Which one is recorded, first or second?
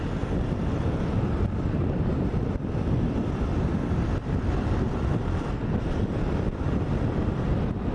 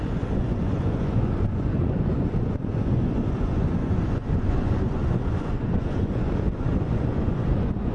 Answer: first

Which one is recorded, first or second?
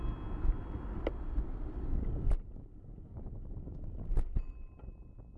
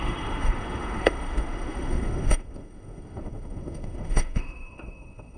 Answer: first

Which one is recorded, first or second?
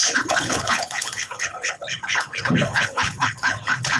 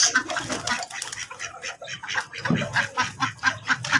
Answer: second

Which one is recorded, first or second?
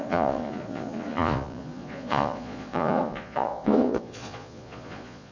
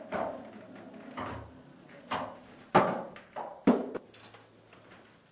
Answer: second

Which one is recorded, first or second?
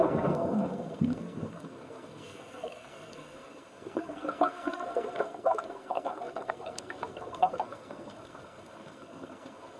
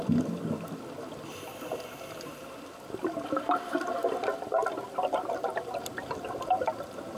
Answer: second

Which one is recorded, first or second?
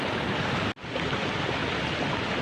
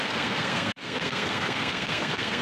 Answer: first